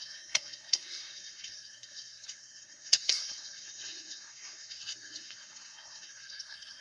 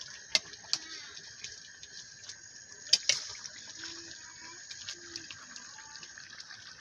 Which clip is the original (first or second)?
second